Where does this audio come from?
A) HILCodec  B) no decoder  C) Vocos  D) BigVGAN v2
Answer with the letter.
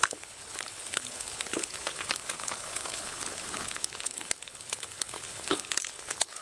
A